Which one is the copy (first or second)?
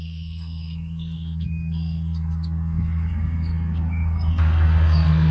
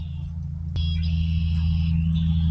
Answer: first